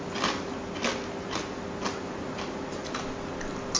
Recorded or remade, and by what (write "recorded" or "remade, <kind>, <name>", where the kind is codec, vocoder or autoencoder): recorded